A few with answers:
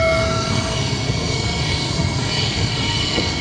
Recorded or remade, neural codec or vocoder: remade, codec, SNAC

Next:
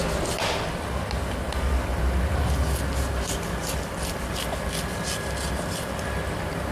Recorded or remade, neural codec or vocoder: recorded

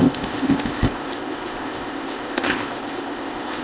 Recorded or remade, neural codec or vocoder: remade, codec, ZipCodec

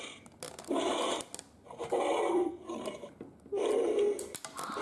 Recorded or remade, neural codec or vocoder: recorded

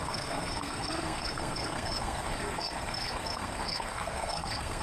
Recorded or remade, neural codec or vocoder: remade, codec, SNAC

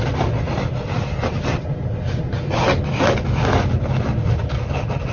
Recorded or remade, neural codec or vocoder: remade, vocoder, BigVGAN v2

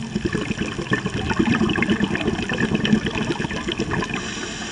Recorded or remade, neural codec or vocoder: recorded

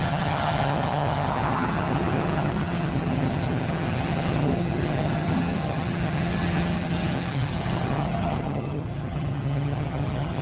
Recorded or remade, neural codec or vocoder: remade, vocoder, HiFi-GAN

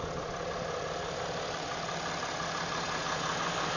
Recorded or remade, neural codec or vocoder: recorded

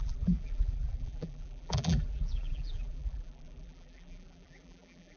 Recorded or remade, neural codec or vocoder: remade, vocoder, BigVGAN v2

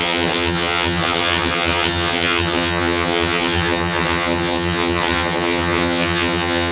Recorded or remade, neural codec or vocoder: remade, vocoder, HiFi-GAN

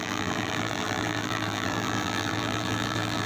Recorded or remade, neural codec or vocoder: remade, vocoder, BigVGAN v2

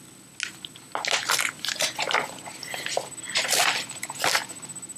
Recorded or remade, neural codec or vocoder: recorded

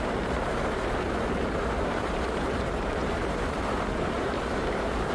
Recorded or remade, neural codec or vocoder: remade, vocoder, BigVGAN v2